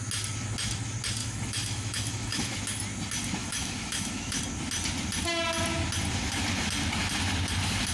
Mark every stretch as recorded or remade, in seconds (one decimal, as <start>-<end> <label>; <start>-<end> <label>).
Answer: 0.0-1.2 recorded; 1.2-2.6 remade; 2.6-3.4 recorded; 3.4-4.4 remade; 4.4-7.9 recorded